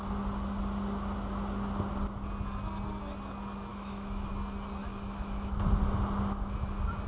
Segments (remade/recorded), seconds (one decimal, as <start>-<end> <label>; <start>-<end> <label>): 0.0-3.7 recorded; 3.7-4.3 remade; 4.3-4.8 recorded; 4.8-5.6 remade; 5.6-7.1 recorded